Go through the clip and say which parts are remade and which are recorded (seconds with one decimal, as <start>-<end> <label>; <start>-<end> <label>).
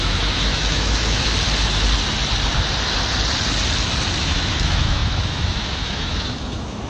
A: 0.0-1.3 remade; 1.3-4.2 recorded; 4.2-6.9 remade